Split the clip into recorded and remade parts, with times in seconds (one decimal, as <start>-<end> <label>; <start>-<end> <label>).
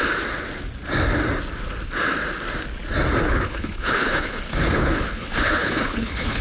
0.0-3.2 recorded; 3.2-6.4 remade